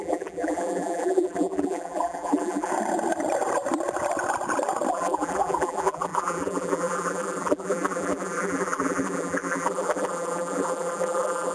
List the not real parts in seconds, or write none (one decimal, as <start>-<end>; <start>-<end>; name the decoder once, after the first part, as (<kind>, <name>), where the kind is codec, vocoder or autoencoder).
0.0-2.7 (vocoder, BigVGAN v2); 4.9-11.5